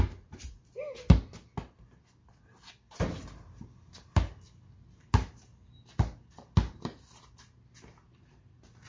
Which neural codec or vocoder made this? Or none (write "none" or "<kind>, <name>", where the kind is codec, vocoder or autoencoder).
none